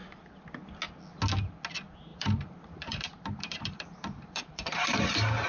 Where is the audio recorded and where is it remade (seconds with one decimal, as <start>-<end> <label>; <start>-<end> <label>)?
0.0-2.1 recorded; 2.1-5.5 remade